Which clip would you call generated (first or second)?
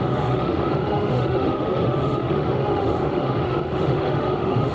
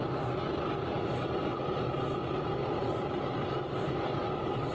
first